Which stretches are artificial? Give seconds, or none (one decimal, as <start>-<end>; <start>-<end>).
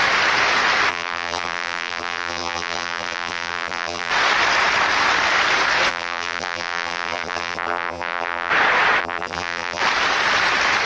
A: 0.9-4.1; 5.9-8.5; 9.0-9.8